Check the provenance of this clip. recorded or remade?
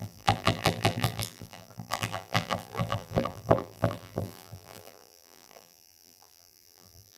remade